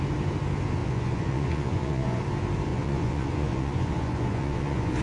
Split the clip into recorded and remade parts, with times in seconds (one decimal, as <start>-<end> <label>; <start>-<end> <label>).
0.0-0.8 recorded; 0.8-2.2 remade; 2.2-2.7 recorded; 2.7-5.0 remade

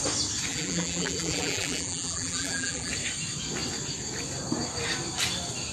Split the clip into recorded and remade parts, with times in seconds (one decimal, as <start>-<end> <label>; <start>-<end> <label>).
0.0-0.5 recorded; 0.5-2.9 remade; 2.9-5.7 recorded

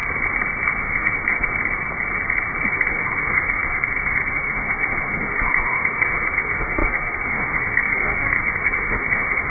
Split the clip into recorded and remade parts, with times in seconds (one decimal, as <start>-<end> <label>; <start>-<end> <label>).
0.0-0.8 recorded; 0.8-1.5 remade; 1.5-2.7 recorded; 2.7-9.5 remade

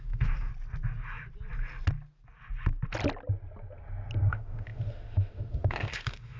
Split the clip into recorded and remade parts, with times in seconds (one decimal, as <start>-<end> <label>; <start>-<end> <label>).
0.0-0.5 remade; 0.5-4.3 recorded; 4.3-6.4 remade

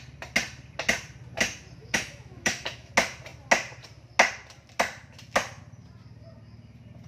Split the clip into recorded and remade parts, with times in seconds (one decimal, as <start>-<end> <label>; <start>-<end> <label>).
0.0-1.8 recorded; 1.8-2.9 remade; 2.9-7.1 recorded

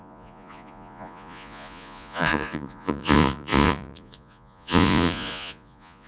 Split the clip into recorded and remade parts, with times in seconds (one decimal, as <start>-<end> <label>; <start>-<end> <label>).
0.0-6.1 remade

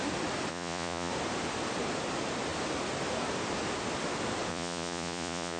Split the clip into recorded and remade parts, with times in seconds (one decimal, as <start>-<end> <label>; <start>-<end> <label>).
0.0-0.5 recorded; 0.5-1.1 remade; 1.1-4.5 recorded; 4.5-5.6 remade